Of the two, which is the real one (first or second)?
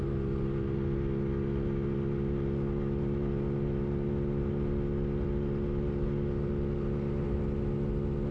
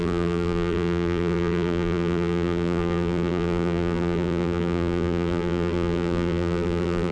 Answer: first